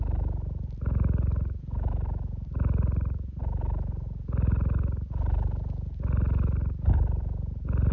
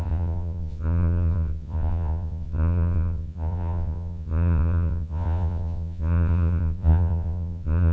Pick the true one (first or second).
first